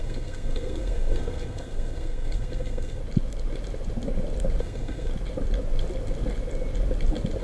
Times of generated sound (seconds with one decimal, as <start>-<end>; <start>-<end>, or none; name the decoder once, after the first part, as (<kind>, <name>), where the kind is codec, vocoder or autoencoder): 0.0-3.0 (codec, SNAC); 4.6-5.1